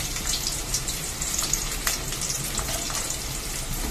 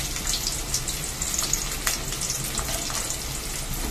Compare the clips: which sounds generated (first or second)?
first